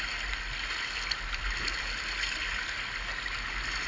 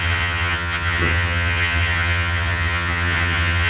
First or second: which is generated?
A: second